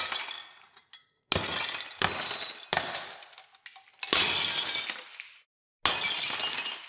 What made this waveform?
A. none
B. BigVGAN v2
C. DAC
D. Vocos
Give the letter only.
A